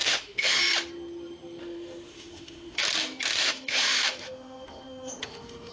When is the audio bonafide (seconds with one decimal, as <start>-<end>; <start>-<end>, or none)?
0.6-1.6; 2.8-3.4

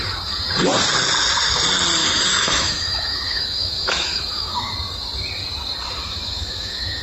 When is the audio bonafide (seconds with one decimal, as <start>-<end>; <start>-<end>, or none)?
0.0-2.0; 4.7-6.0

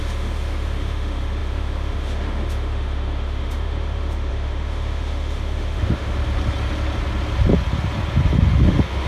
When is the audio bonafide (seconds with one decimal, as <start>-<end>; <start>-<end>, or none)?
6.2-8.5